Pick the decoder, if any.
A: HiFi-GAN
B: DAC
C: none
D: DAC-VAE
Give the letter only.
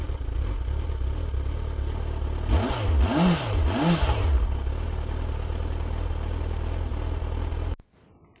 C